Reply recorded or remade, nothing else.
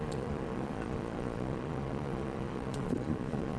remade